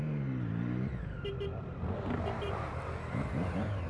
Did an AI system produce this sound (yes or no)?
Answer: no